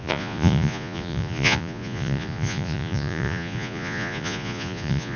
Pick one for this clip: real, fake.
fake